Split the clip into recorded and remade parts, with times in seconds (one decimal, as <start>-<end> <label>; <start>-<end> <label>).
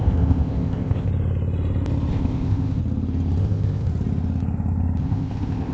0.0-1.1 remade; 1.1-2.1 recorded; 2.1-2.8 remade; 2.8-3.4 recorded; 3.4-3.9 remade; 3.9-5.0 recorded; 5.0-5.7 remade